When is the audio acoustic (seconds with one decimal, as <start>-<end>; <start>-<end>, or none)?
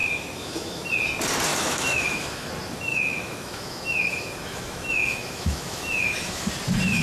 0.9-1.5; 2.5-2.9; 6.5-7.0